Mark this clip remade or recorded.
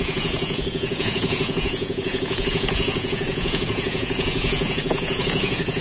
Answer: remade